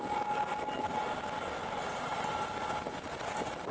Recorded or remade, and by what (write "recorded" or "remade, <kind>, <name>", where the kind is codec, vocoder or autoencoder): recorded